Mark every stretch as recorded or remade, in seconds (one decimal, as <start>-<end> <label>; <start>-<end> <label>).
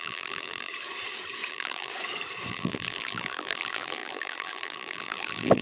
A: 0.0-0.7 remade; 0.7-1.5 recorded; 1.5-1.9 remade; 1.9-2.5 recorded; 2.5-5.6 remade